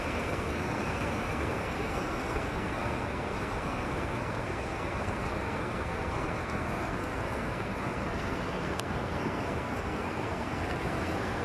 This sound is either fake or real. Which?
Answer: fake